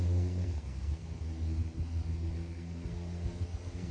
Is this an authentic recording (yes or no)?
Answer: no